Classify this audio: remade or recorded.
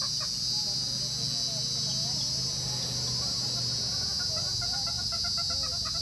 recorded